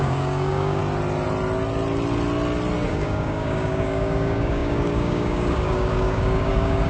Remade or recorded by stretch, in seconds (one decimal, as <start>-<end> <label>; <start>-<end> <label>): 0.0-0.8 remade; 0.8-2.9 recorded; 2.9-6.9 remade